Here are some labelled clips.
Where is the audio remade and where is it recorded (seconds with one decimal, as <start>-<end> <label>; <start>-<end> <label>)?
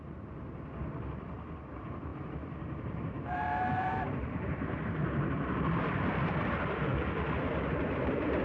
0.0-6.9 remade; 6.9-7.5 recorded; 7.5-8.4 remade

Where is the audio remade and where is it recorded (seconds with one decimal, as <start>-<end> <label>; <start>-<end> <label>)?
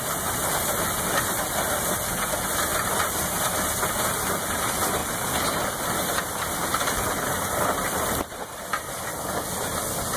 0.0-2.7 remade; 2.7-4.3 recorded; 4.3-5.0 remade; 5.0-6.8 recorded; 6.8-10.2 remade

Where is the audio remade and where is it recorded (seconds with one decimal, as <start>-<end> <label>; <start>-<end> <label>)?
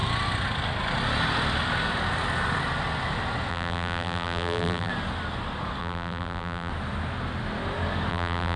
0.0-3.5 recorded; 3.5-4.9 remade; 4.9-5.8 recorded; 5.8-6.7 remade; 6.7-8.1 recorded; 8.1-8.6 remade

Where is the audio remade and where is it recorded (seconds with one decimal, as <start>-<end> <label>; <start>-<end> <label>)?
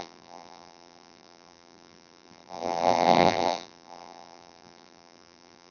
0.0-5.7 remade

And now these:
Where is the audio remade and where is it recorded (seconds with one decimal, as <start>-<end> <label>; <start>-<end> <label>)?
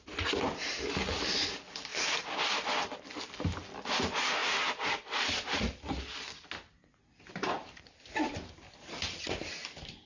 0.0-1.9 recorded; 1.9-2.5 remade; 2.5-10.1 recorded